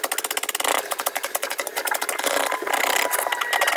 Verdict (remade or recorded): recorded